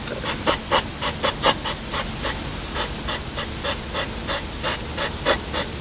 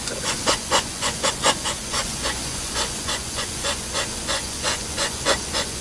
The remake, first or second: second